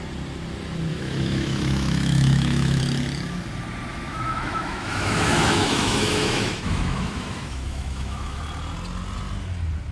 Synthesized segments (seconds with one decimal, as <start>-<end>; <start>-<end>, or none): 0.9-2.8; 3.9-8.4